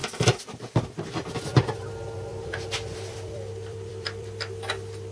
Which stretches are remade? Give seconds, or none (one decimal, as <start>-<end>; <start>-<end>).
0.0-1.9; 2.3-4.4